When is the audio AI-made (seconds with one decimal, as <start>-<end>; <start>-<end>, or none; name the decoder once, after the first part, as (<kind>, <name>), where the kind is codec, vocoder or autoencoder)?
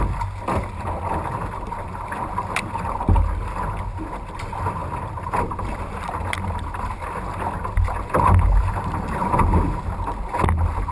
none